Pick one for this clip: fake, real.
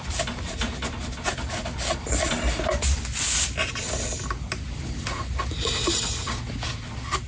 real